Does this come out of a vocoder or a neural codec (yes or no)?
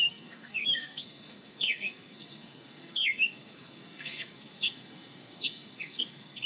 yes